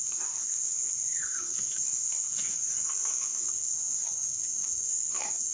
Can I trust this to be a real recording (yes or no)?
no